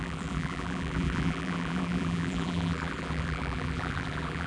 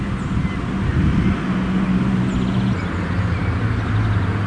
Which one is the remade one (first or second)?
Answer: first